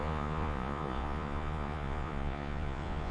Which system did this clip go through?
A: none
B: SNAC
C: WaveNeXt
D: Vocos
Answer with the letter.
D